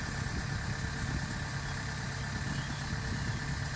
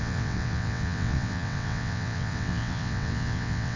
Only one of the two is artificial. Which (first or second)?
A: second